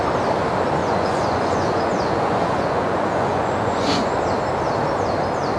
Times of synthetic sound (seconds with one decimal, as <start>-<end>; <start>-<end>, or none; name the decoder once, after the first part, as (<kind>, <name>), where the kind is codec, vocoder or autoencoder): 0.8-4.2 (vocoder, Vocos)